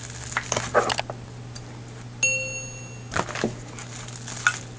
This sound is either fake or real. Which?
real